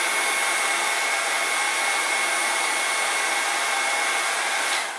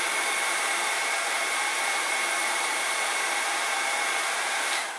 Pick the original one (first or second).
first